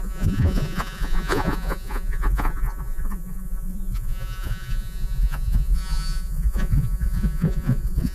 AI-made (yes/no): yes